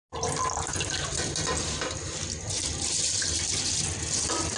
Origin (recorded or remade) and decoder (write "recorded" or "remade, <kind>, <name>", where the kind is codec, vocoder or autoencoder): recorded